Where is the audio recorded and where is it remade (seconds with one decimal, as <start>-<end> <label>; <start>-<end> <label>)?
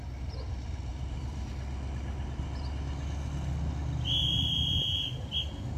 0.0-0.9 recorded; 0.9-1.5 remade; 1.5-4.2 recorded; 4.2-5.2 remade; 5.2-5.8 recorded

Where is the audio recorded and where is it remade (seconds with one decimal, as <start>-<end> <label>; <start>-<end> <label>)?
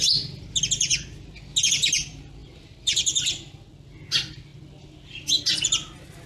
0.0-2.4 recorded; 2.4-3.7 remade; 3.7-6.3 recorded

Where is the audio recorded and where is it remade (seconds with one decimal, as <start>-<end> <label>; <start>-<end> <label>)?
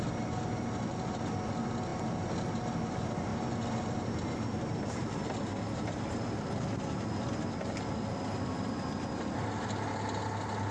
0.0-10.7 recorded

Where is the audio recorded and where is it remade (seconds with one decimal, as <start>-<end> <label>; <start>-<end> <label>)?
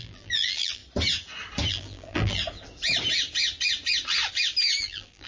0.0-0.8 remade; 0.8-1.7 recorded; 1.7-2.4 remade; 2.4-4.8 recorded; 4.8-5.3 remade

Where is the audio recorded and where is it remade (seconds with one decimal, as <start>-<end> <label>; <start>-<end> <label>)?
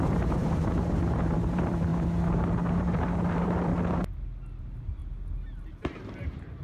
0.0-1.9 remade; 1.9-2.7 recorded; 2.7-3.7 remade; 3.7-4.6 recorded; 4.6-5.0 remade; 5.0-5.7 recorded; 5.7-6.6 remade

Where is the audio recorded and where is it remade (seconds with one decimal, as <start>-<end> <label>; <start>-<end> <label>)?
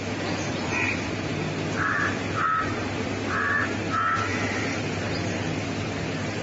0.0-6.4 recorded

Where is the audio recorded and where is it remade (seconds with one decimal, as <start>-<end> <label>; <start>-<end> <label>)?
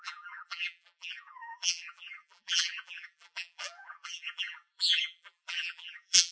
0.0-6.3 remade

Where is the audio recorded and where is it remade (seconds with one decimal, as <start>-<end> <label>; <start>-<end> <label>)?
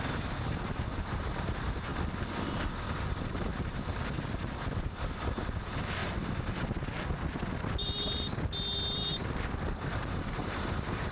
0.0-1.9 remade; 1.9-3.1 recorded; 3.1-6.0 remade; 6.0-9.9 recorded; 9.9-11.1 remade